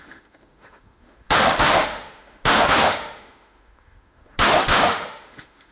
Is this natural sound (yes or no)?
no